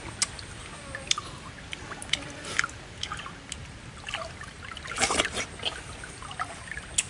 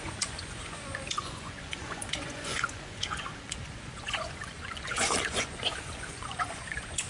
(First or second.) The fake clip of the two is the second